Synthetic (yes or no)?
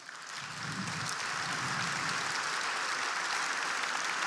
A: no